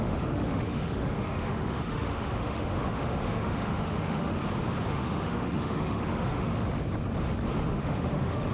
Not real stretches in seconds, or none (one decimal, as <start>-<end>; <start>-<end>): 0.0-4.4; 4.9-6.5; 7.6-8.5